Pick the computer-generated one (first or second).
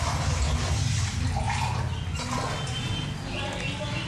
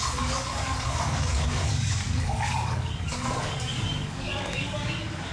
second